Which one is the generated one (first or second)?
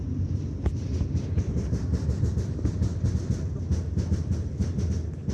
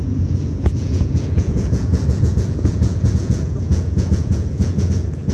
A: second